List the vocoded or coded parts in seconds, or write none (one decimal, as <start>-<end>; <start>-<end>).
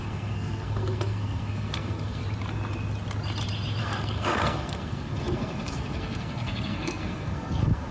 0.0-2.2; 3.8-7.9